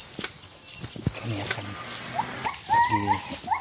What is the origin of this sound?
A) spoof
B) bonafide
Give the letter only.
B